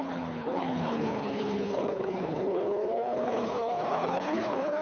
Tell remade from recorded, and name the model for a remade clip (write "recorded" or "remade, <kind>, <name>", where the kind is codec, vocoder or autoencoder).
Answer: remade, codec, HILCodec